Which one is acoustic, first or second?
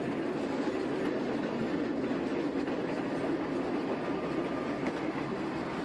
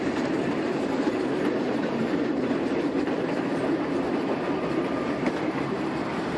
first